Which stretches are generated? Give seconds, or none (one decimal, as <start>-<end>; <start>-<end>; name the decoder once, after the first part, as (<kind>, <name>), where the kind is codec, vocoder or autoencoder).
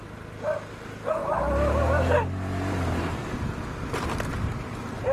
none